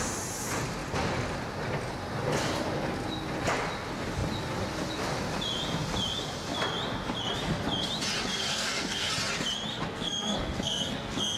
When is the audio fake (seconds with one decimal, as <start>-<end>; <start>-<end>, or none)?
8.5-9.1; 9.7-11.4